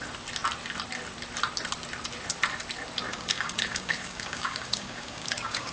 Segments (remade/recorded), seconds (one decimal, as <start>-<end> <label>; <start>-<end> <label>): 0.0-3.1 recorded; 3.1-5.7 remade